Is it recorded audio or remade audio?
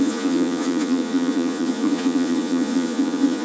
remade